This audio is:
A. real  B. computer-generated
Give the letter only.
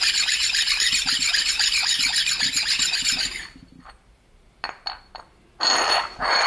A